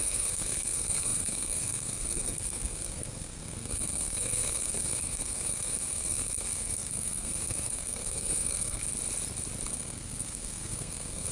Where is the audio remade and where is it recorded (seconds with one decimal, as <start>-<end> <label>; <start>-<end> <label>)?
0.0-8.8 remade; 8.8-9.7 recorded; 9.7-11.3 remade